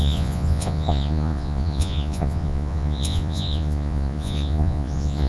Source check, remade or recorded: remade